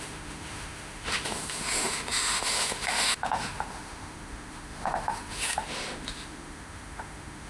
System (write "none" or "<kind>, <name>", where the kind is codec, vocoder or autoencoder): autoencoder, DAC-VAE